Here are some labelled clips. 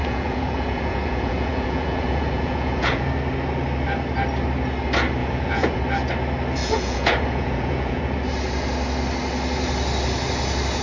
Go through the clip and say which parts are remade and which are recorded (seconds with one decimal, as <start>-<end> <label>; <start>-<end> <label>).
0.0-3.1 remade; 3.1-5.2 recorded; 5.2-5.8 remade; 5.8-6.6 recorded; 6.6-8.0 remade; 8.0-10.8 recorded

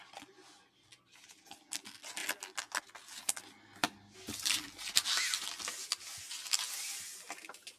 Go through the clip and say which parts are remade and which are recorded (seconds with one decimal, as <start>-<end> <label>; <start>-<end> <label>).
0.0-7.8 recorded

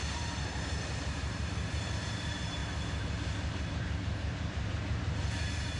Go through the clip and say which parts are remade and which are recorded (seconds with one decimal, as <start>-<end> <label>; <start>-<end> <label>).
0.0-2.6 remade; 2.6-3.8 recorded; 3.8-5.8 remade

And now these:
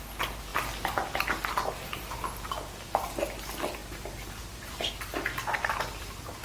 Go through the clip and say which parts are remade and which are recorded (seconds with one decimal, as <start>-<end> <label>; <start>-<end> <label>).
0.0-6.4 recorded

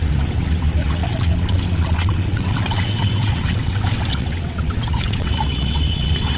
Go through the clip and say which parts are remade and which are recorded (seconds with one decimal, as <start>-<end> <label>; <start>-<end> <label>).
0.0-6.4 remade